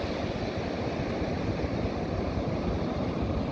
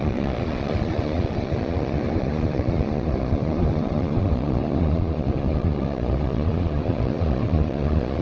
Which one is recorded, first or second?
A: first